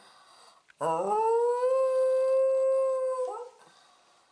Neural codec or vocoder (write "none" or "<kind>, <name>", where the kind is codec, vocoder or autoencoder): none